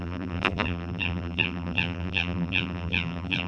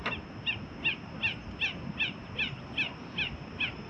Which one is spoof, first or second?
first